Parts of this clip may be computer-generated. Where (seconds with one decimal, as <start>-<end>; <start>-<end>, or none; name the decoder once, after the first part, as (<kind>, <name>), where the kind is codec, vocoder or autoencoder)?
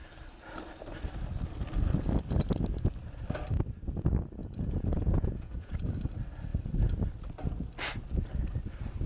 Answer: 4.4-5.9 (vocoder, Vocos)